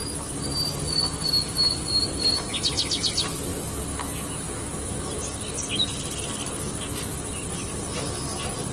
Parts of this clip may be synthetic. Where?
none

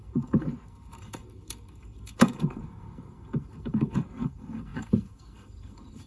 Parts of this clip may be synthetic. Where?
0.0-6.1 (codec, SNAC)

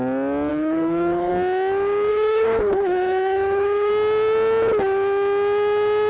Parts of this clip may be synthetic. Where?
0.5-1.3 (codec, HILCodec); 2.1-3.9